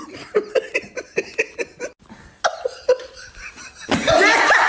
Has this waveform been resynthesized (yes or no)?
no